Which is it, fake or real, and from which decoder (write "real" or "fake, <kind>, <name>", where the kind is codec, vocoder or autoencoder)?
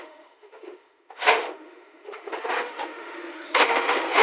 fake, autoencoder, DAC-VAE